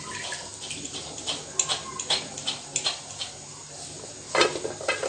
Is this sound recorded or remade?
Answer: recorded